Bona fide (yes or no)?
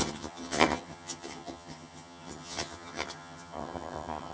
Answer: no